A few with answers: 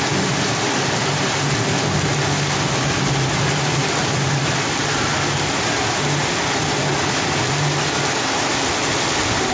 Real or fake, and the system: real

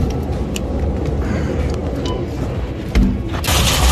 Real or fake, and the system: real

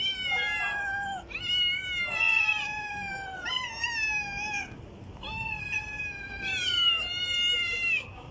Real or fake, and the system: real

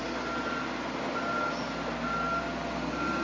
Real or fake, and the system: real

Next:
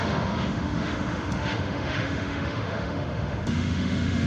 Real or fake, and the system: fake, autoencoder, DAC-VAE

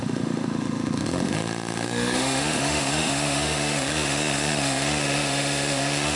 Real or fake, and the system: fake, autoencoder, DAC-VAE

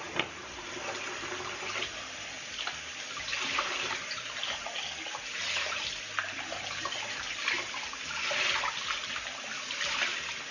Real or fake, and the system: real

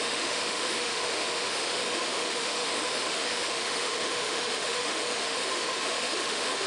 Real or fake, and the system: fake, autoencoder, DAC-VAE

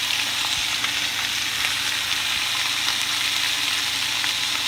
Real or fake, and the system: real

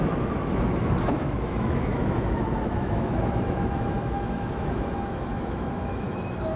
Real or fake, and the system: fake, autoencoder, DAC-VAE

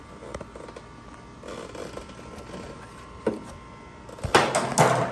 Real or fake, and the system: real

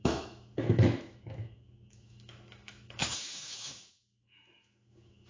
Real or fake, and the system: fake, autoencoder, DAC-VAE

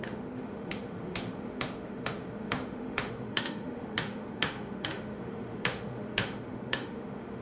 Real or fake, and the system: fake, autoencoder, DAC-VAE